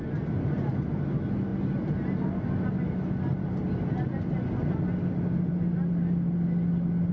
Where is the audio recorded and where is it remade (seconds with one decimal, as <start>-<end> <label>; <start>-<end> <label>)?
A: 0.0-7.1 recorded